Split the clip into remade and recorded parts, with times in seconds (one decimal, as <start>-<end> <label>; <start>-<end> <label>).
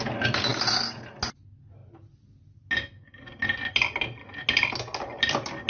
0.0-5.7 recorded